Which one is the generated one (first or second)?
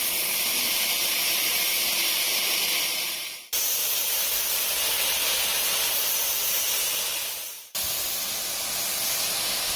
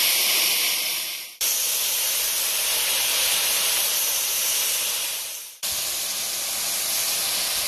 second